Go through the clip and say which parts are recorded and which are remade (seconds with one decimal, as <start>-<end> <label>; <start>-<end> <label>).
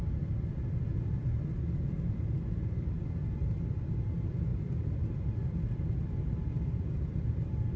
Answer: 0.0-7.8 remade